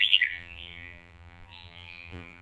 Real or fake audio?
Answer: fake